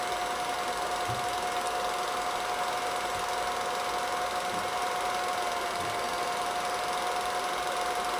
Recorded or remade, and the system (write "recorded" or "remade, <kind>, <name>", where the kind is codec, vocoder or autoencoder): recorded